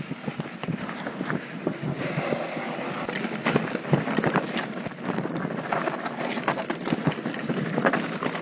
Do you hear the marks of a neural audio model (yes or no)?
no